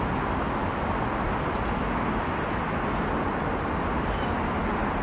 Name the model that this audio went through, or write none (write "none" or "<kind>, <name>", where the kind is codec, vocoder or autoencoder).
none